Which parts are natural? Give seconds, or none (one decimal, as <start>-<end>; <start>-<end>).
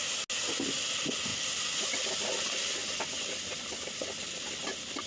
0.0-1.3; 2.1-5.1